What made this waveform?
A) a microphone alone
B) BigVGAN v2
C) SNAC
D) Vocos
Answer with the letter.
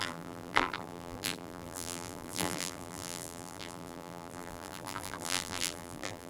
B